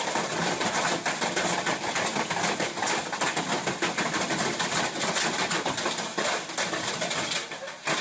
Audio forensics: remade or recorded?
recorded